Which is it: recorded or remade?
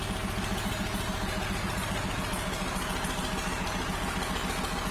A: recorded